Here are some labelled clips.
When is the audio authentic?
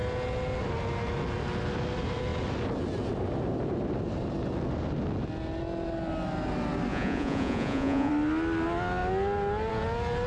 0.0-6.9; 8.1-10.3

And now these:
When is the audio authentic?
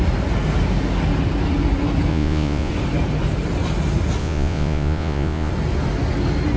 0.0-2.1; 2.7-4.2; 5.5-6.6